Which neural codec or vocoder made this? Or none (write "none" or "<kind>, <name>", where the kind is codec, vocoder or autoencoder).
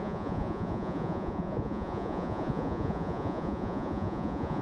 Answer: vocoder, Vocos